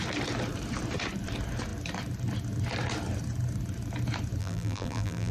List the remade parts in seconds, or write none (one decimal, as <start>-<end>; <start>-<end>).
4.4-5.3